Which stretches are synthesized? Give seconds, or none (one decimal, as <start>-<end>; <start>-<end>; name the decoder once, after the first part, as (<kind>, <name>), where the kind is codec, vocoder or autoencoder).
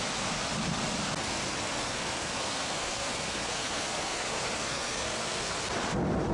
1.8-5.6 (codec, SNAC)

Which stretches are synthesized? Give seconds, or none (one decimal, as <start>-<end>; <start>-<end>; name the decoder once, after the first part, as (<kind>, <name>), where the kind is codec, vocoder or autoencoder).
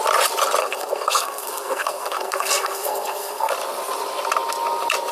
0.6-3.5 (codec, SNAC)